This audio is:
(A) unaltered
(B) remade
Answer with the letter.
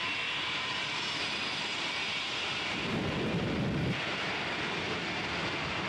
B